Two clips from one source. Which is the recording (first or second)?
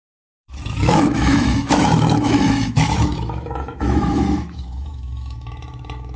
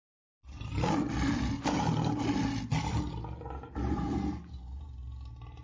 second